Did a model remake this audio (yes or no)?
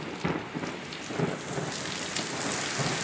no